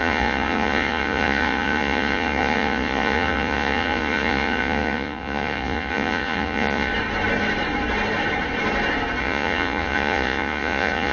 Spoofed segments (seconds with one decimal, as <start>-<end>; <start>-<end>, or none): 0.0-6.9; 9.2-11.1